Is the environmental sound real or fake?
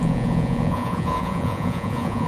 fake